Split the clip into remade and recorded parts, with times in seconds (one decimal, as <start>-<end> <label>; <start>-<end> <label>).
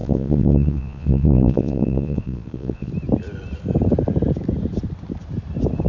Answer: 0.0-2.9 remade; 2.9-5.9 recorded